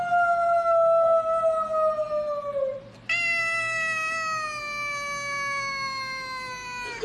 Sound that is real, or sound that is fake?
real